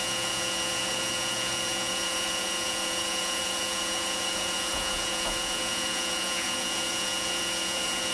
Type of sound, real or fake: fake